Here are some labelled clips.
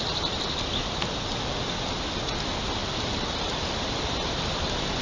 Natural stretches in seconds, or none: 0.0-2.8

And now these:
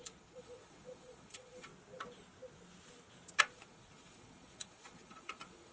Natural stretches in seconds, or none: 1.7-3.4

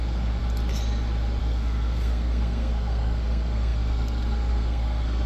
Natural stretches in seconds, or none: 0.4-1.4

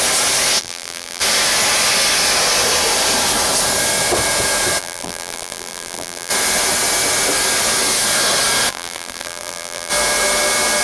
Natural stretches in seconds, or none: 0.0-0.6; 1.2-4.8; 6.3-8.7; 9.9-10.8